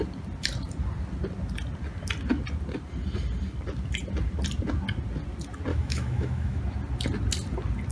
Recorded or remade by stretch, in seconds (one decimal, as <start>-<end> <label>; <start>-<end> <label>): 0.0-5.7 recorded; 5.7-6.6 remade; 6.6-7.9 recorded

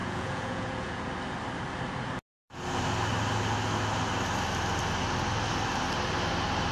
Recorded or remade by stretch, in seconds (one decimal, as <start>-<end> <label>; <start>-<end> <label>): 0.0-1.0 remade; 1.0-6.7 recorded

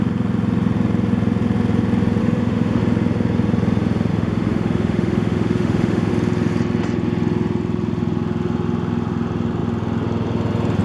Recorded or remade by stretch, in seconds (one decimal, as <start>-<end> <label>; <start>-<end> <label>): 0.0-2.2 recorded; 2.2-2.8 remade; 2.8-4.1 recorded; 4.1-6.1 remade; 6.1-10.8 recorded

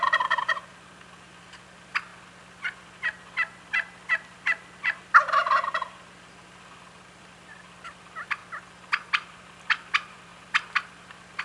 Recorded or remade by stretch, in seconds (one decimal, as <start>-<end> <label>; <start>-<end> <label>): 0.0-2.1 remade; 2.1-5.0 recorded; 5.0-8.4 remade; 8.4-9.1 recorded; 9.1-11.4 remade

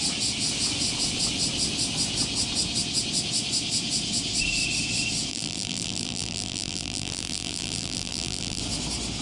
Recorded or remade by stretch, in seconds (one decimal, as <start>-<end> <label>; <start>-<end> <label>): 0.0-5.3 recorded; 5.3-8.6 remade; 8.6-9.2 recorded

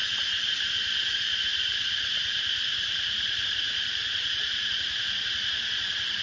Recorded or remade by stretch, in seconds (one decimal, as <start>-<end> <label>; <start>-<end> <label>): 0.0-0.6 remade; 0.6-1.5 recorded; 1.5-5.2 remade; 5.2-6.2 recorded

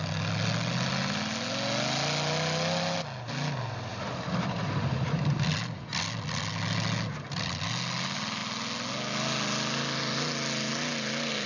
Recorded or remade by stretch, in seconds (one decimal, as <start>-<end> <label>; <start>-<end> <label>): 0.0-3.9 recorded; 3.9-5.5 remade; 5.5-11.5 recorded